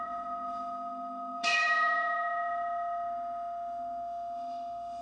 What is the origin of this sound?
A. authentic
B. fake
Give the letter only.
B